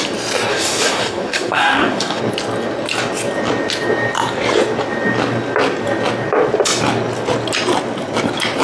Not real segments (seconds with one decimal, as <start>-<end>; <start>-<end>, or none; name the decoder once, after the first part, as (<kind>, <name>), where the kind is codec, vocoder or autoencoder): 0.5-2.2 (codec, DAC)